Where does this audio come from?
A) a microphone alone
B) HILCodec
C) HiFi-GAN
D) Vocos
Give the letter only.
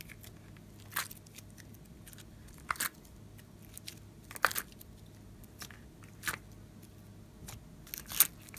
A